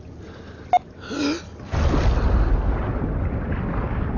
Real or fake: real